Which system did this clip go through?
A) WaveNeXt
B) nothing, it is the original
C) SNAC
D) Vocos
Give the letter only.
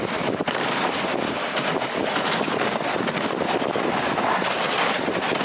B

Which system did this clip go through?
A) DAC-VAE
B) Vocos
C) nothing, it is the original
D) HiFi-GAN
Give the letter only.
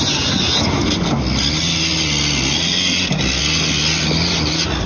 C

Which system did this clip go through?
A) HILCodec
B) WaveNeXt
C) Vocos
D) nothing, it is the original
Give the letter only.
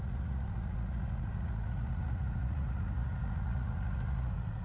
C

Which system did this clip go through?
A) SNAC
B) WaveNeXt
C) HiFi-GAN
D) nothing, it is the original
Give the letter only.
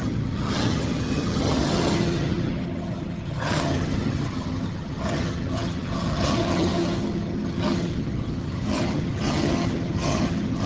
C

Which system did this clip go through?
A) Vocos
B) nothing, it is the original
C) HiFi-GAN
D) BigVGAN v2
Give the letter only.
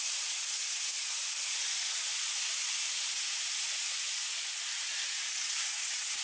A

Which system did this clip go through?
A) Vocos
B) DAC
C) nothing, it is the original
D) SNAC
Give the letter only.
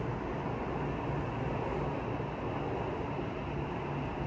C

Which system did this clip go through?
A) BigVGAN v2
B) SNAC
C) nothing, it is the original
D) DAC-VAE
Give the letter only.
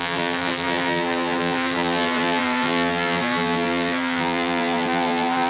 A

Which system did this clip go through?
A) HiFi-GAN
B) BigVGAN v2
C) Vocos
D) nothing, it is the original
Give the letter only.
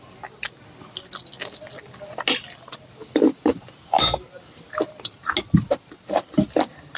D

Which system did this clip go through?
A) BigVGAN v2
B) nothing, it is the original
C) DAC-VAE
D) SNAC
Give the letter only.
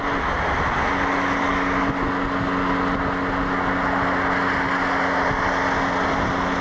B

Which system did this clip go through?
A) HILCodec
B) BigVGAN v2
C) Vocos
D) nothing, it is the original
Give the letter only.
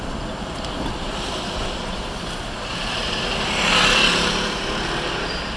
D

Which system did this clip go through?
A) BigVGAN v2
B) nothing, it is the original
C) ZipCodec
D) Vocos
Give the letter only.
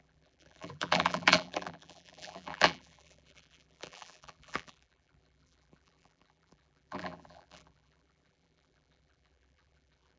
A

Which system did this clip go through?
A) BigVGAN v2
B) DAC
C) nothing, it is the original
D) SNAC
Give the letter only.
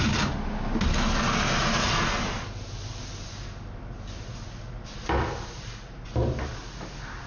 C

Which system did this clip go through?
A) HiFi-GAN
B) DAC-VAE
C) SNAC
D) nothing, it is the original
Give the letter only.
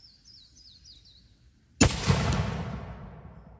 D